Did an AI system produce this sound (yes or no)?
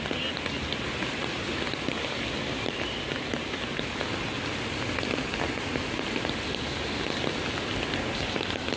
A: no